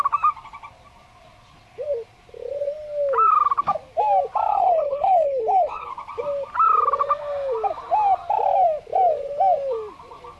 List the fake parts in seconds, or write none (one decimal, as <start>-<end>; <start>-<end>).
4.5-5.9